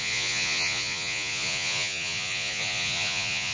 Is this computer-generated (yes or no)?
yes